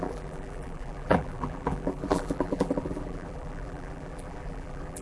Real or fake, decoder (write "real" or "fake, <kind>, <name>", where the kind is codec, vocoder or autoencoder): fake, vocoder, BigVGAN v2